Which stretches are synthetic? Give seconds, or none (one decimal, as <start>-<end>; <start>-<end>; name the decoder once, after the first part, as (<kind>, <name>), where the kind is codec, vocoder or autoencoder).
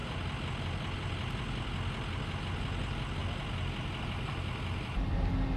none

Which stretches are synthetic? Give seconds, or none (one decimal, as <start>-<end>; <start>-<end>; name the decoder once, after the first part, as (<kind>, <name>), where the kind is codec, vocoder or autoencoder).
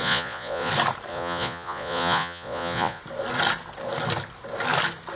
0.0-0.7 (vocoder, Vocos); 1.1-3.0